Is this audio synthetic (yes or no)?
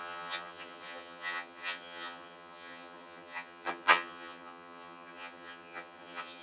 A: yes